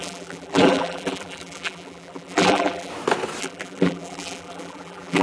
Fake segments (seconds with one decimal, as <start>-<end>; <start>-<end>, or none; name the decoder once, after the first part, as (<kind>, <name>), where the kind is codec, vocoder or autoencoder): 0.0-2.9 (vocoder, BigVGAN v2); 3.4-5.2